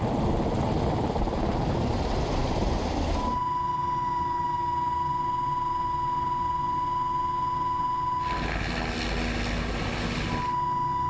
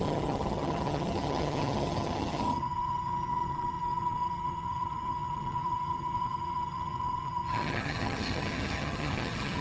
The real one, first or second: first